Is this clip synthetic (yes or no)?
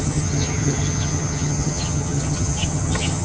yes